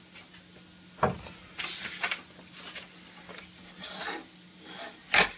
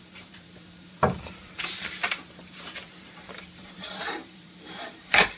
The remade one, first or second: second